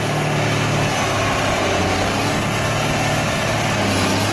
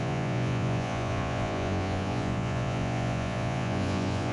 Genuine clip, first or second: first